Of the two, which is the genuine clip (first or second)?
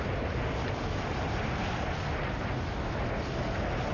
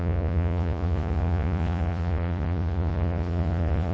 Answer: first